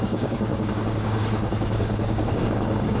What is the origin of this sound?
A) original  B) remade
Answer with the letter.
B